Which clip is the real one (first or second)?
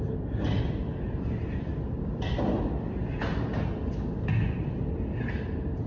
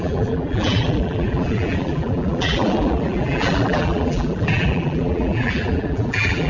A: first